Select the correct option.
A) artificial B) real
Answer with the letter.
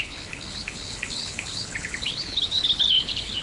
A